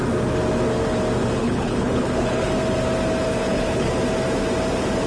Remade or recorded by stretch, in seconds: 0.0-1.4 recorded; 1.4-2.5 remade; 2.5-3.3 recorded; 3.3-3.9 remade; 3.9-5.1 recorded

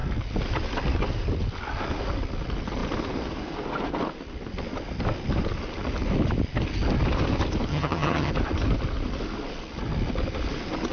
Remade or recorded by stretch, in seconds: 0.0-7.7 recorded; 7.7-8.3 remade; 8.3-10.9 recorded

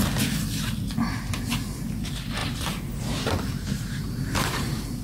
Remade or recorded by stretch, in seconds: 0.0-2.4 recorded; 2.4-5.0 remade

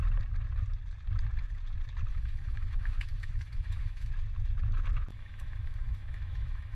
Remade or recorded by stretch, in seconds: 0.0-2.1 recorded; 2.1-4.1 remade; 4.1-5.1 recorded; 5.1-6.8 remade